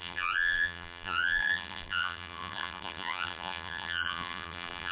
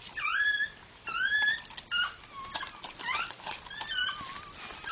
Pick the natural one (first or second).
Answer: second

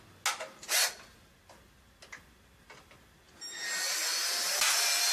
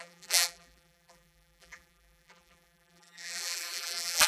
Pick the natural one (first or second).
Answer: first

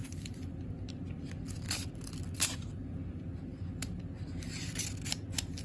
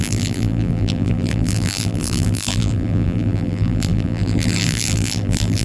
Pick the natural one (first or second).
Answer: first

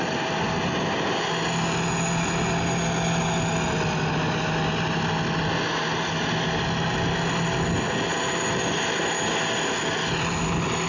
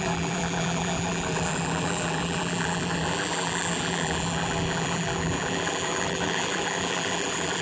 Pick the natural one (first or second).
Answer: first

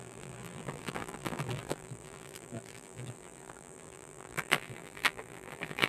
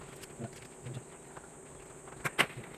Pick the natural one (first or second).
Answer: second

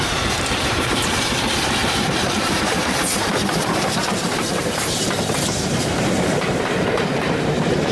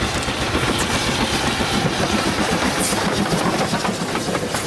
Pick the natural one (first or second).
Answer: second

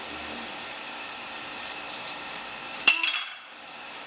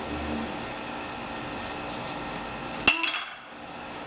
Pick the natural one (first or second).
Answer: second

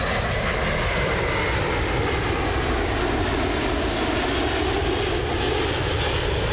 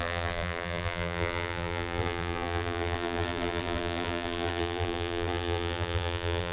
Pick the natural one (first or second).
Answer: first